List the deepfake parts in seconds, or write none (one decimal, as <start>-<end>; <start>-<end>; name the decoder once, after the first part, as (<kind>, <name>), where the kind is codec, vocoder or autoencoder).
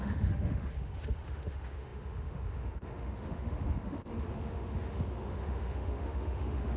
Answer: 0.0-6.8 (autoencoder, DAC-VAE)